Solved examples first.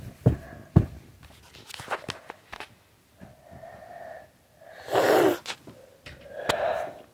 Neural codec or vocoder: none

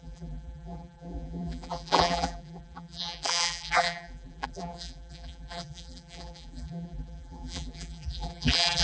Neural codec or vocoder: vocoder, BigVGAN v2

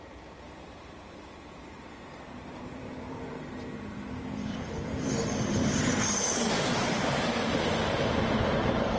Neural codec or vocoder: vocoder, BigVGAN v2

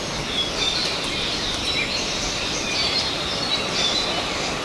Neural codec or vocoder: none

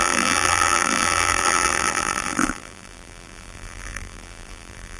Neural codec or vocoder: vocoder, BigVGAN v2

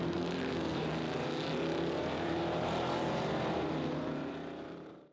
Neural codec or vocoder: vocoder, BigVGAN v2